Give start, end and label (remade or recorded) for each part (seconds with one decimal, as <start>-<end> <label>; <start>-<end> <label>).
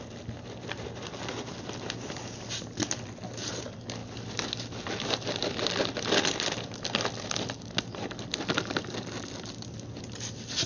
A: 0.0-10.7 recorded